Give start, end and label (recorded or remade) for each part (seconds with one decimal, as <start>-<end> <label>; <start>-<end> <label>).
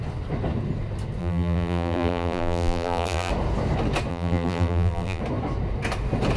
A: 0.0-1.2 recorded; 1.2-3.3 remade; 3.3-4.1 recorded; 4.1-5.2 remade; 5.2-6.4 recorded